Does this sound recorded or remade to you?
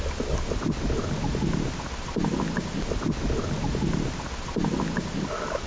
recorded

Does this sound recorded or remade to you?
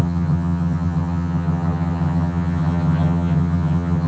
remade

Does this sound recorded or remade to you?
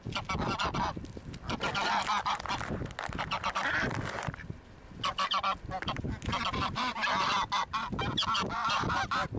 recorded